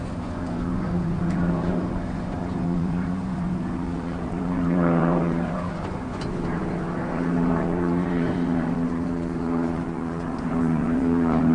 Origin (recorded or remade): remade